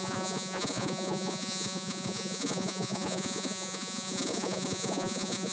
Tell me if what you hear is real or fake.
fake